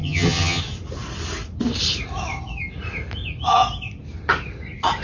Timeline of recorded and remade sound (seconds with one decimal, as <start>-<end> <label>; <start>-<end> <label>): 0.0-0.6 remade; 0.6-5.0 recorded